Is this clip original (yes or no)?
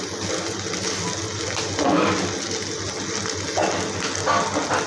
yes